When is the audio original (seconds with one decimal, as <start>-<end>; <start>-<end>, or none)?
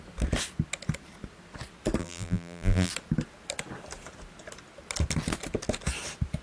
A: 0.0-2.0; 2.9-6.4